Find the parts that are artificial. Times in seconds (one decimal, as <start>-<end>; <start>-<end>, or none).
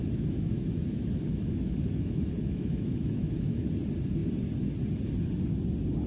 0.0-3.7